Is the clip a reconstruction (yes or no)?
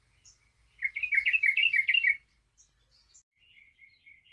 no